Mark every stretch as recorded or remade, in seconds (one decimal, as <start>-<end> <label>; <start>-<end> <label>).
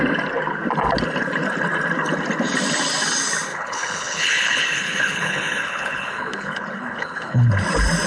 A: 0.0-3.5 recorded; 3.5-7.5 remade; 7.5-8.1 recorded